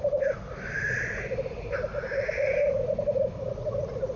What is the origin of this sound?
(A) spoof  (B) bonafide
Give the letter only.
B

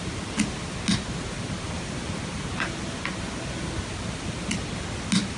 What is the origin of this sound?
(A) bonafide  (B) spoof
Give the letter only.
A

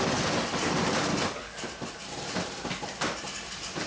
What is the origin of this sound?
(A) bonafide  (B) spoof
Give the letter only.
A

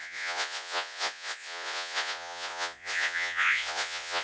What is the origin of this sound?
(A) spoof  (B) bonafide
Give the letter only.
A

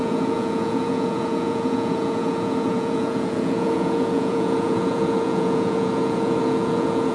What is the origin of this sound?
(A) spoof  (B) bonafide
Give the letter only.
A